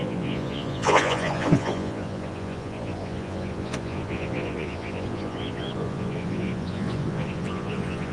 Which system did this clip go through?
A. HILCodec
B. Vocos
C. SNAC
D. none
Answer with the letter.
B